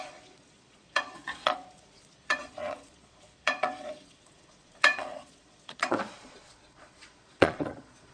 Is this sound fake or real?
fake